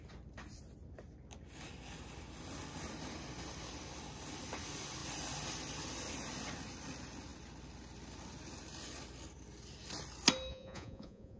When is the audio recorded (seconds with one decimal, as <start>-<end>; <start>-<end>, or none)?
0.0-10.5